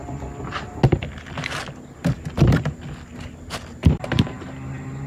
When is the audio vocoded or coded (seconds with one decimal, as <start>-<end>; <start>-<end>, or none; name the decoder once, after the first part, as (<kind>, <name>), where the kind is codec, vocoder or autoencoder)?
3.1-5.1 (vocoder, BigVGAN v2)